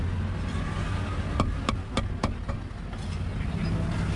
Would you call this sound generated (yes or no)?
no